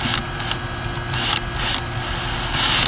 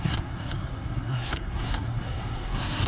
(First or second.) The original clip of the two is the first